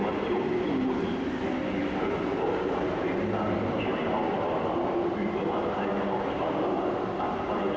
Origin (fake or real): real